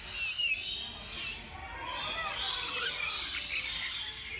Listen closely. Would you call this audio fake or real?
real